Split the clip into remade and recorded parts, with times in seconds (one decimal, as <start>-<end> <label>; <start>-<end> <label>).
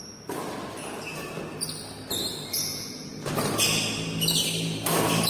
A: 0.0-2.7 recorded; 2.7-3.3 remade; 3.3-5.3 recorded